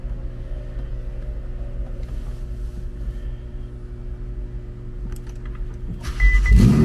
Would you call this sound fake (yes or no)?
no